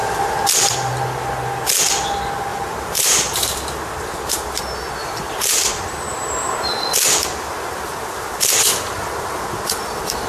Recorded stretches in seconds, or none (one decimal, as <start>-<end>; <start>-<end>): 0.0-2.5; 4.6-5.0; 5.7-10.3